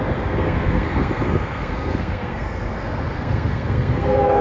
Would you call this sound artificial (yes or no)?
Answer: yes